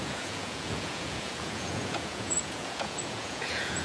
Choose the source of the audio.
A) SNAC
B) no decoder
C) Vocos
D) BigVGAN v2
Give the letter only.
C